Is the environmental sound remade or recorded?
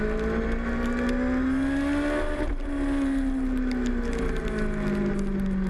recorded